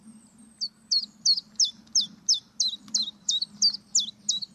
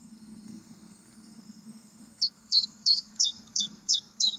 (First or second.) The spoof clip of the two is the second